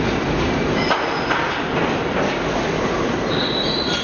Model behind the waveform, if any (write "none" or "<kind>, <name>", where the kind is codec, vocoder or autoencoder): vocoder, BigVGAN v2